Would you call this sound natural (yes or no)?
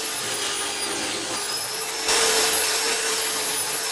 yes